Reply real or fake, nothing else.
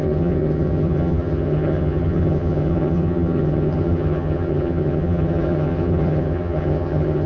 fake